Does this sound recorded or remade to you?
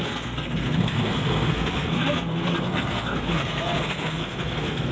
remade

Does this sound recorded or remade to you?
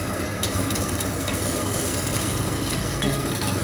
remade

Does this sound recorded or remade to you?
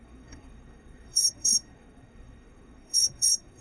remade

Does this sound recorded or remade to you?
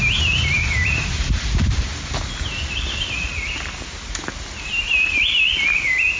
recorded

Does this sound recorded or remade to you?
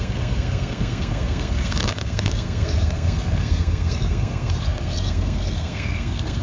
remade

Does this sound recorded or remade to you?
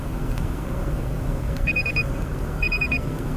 remade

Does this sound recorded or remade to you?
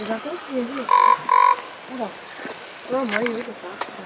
recorded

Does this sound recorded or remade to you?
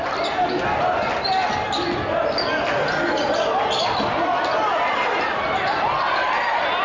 recorded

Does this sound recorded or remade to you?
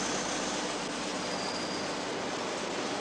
recorded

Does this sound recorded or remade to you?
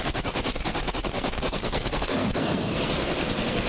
remade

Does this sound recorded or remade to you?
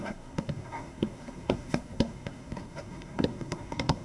remade